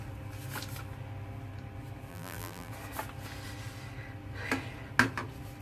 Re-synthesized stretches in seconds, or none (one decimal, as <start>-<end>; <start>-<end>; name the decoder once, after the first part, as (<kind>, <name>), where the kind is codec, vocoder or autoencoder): 2.1-2.7 (vocoder, BigVGAN v2)